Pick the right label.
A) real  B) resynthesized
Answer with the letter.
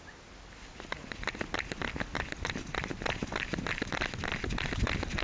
A